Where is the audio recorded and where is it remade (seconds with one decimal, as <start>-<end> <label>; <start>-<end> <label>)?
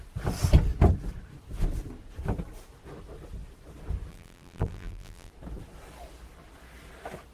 0.0-4.1 recorded; 4.1-5.3 remade; 5.3-7.3 recorded